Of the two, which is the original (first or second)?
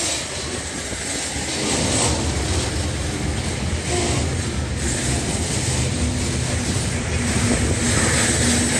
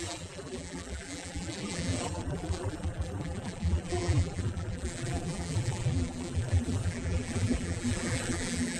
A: first